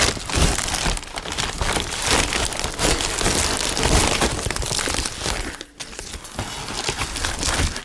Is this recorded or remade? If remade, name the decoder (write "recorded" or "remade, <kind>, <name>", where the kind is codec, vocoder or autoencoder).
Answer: recorded